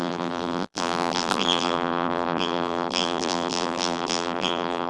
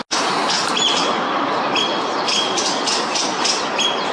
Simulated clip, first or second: first